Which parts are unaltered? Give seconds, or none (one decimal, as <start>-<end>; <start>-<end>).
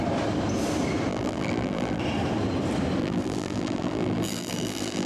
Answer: 0.0-1.1; 2.0-3.0